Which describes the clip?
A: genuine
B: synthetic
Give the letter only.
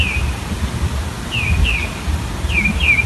A